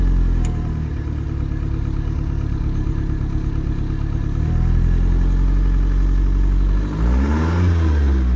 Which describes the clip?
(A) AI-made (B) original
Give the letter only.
B